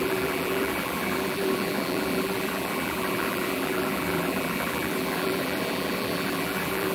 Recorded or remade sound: remade